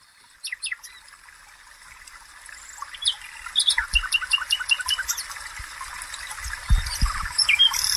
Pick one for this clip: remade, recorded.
recorded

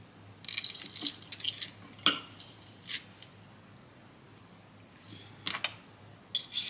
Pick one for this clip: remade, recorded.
recorded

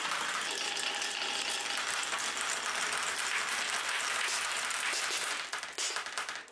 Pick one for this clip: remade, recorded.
recorded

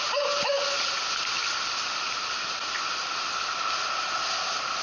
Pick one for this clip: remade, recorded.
recorded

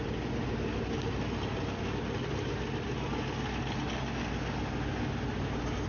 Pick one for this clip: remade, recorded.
recorded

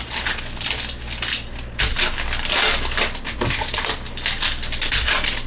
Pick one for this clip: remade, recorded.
recorded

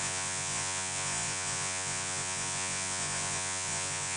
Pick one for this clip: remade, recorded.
remade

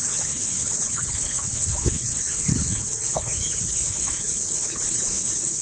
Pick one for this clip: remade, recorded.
remade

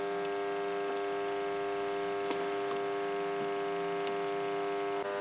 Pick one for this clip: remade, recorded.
recorded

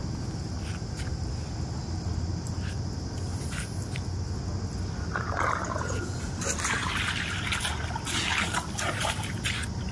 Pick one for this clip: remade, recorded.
recorded